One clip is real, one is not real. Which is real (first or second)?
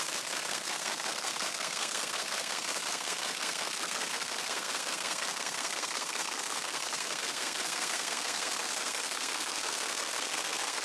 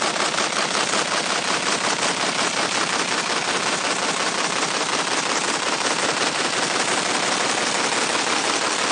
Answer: second